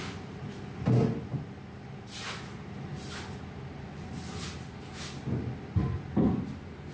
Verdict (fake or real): real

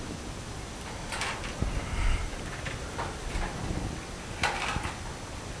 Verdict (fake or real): real